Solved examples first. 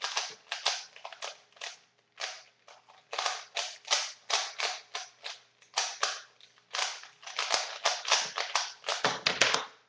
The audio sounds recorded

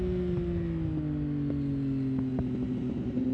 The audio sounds recorded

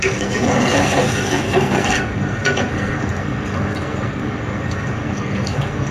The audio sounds remade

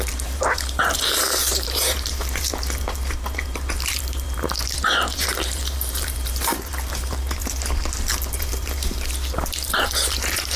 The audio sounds remade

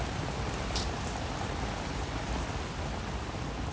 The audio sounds recorded